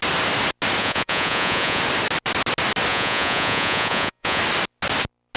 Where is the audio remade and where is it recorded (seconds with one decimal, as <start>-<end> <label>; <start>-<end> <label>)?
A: 0.0-0.8 recorded; 0.8-1.8 remade; 1.8-2.9 recorded; 2.9-4.4 remade; 4.4-5.4 recorded